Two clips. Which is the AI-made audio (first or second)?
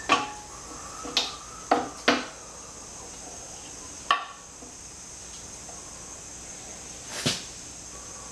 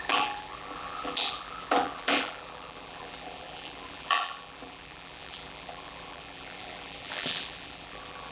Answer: second